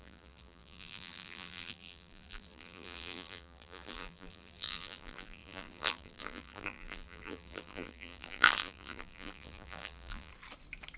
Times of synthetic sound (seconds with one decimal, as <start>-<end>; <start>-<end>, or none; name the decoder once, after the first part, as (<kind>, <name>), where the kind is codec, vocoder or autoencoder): 0.0-10.3 (vocoder, BigVGAN v2)